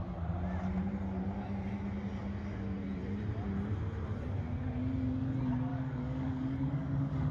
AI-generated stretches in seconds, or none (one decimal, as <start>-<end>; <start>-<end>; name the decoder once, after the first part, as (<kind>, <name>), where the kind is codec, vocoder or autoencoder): 5.7-7.3 (codec, DAC)